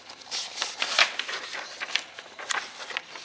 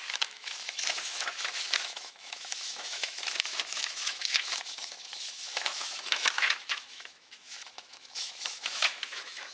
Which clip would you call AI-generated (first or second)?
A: second